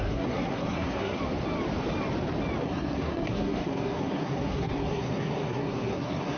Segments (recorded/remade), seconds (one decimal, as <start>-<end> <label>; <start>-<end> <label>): 0.0-1.2 remade; 1.2-2.6 recorded; 2.6-6.4 remade